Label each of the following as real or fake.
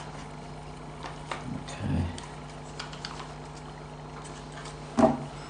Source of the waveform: real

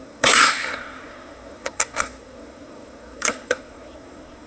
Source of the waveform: fake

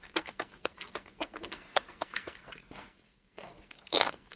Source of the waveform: fake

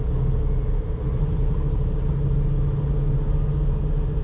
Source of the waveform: real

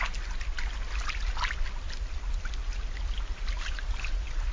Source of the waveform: real